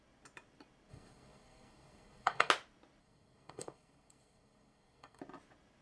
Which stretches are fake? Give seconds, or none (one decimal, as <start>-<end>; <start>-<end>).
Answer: 0.9-2.5; 3.0-5.2